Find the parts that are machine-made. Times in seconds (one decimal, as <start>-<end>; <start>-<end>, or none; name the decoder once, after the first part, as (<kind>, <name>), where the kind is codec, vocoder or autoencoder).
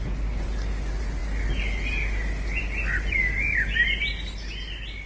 none